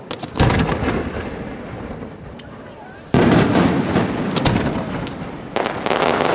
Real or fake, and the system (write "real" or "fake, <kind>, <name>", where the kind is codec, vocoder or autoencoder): real